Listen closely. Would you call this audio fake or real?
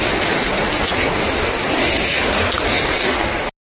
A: real